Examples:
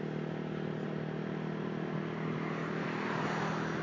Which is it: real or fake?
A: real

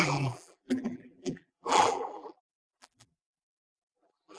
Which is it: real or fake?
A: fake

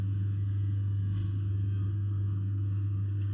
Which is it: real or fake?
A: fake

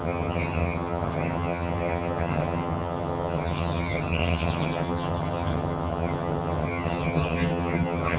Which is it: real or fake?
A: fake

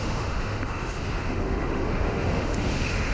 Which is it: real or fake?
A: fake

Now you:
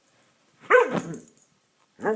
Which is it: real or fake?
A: fake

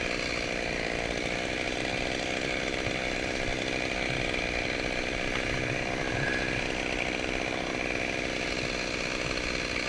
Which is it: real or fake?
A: fake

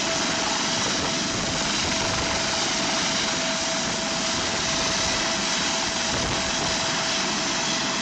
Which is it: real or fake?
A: real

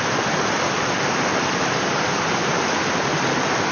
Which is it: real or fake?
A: real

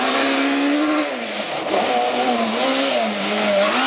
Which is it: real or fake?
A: real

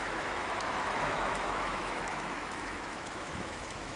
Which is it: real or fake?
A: fake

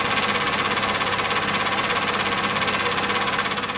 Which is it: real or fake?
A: real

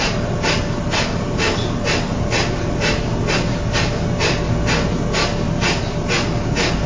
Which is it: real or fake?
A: real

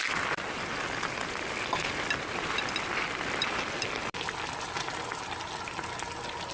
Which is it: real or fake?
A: real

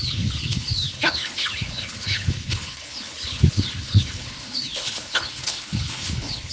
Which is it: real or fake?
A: fake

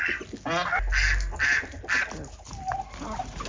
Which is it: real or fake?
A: real